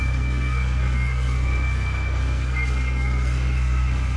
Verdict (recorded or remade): remade